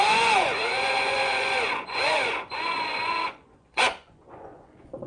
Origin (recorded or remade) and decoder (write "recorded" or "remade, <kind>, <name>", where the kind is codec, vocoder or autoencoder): remade, vocoder, Vocos